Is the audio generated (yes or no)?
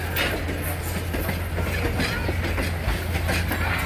no